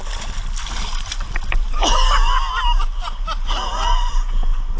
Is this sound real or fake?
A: real